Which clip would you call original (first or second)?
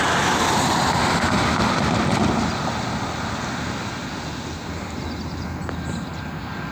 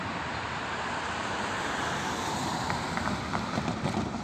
first